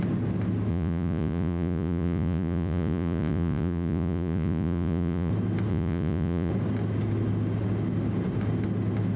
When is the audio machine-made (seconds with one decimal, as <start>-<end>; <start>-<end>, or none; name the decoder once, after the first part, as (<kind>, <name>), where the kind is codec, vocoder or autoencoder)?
0.7-5.3 (vocoder, Vocos); 5.7-6.5